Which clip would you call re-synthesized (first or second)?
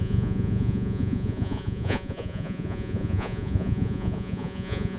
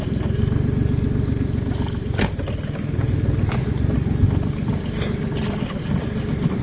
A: first